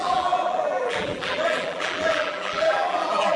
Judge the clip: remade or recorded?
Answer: remade